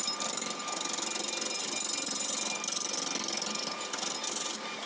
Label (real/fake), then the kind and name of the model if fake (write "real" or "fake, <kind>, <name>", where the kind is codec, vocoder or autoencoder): real